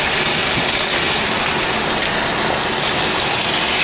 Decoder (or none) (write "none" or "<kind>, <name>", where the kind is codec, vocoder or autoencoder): none